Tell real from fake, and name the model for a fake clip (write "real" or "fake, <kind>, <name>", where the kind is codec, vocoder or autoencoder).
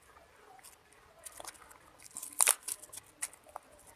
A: real